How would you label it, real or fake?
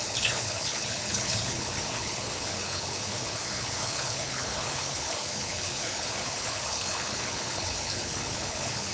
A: fake